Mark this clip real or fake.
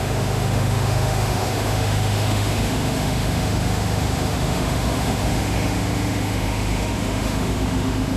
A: fake